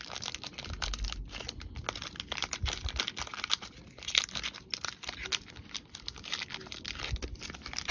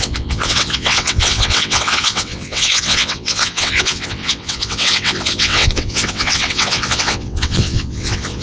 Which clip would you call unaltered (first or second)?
first